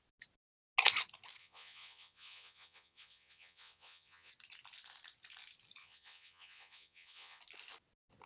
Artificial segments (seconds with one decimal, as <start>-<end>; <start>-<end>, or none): 1.4-4.3; 5.8-7.4